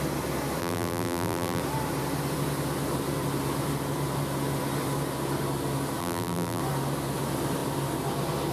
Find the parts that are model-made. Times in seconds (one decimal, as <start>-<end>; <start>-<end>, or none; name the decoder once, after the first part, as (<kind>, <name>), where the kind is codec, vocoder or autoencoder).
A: 0.6-1.6 (vocoder, BigVGAN v2); 6.0-6.6